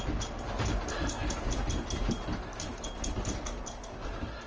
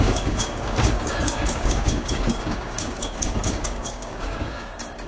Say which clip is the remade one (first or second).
second